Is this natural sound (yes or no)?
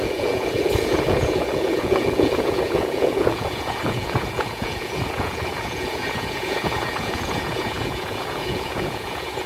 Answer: no